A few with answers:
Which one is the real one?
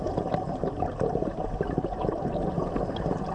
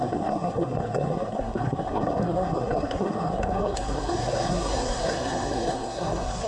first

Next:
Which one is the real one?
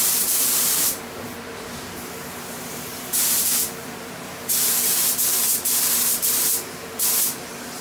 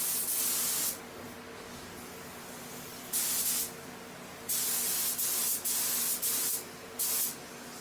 second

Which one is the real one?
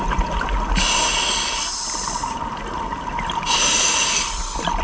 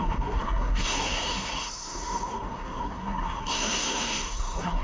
first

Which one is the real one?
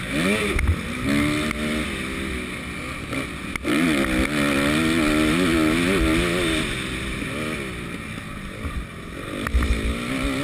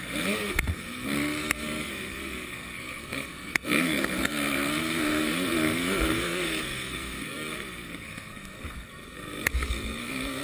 first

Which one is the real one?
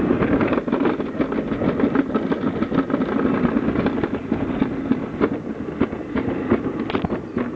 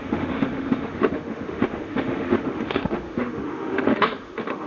first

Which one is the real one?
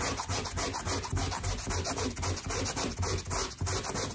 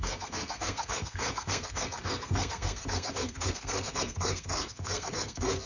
first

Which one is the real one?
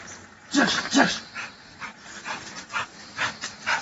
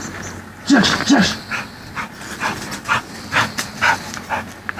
second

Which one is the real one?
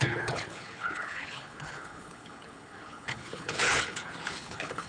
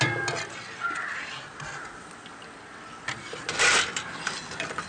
second